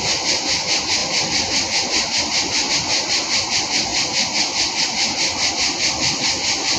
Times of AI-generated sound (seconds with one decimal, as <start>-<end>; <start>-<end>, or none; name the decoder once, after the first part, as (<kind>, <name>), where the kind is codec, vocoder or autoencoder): none